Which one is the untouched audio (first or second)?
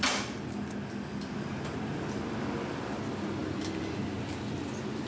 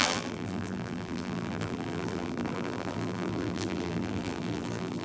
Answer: first